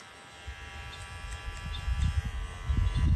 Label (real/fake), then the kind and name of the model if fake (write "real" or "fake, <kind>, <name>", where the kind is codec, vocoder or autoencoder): fake, vocoder, BigVGAN v2